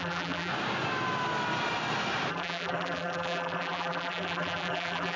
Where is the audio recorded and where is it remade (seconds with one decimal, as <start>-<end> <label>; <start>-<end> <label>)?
0.0-0.5 remade; 0.5-2.3 recorded; 2.3-5.2 remade